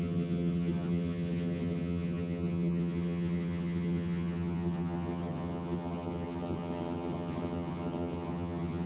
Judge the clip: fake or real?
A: fake